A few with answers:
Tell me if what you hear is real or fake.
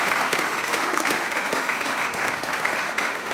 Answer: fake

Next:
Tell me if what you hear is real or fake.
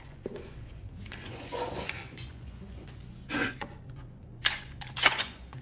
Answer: fake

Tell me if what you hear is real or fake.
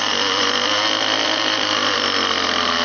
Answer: fake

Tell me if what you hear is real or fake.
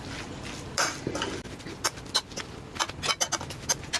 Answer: real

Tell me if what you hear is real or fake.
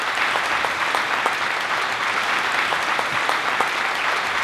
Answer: real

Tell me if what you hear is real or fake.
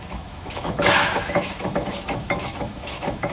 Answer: fake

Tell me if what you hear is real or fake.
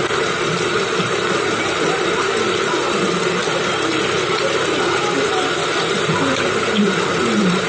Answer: fake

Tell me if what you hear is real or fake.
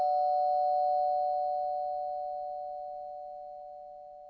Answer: real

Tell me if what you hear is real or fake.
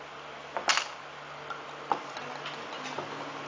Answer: real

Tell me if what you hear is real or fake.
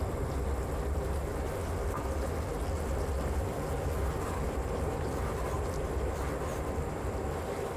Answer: fake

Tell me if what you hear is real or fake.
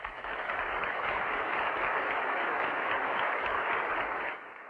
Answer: fake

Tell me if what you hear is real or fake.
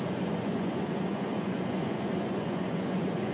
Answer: fake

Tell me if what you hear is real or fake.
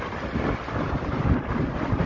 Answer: real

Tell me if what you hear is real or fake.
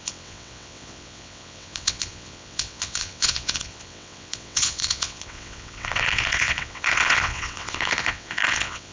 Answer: fake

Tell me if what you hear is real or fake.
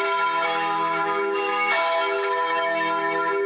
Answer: fake